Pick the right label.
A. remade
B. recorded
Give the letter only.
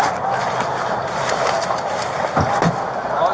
B